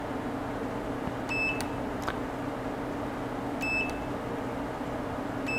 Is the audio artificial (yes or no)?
no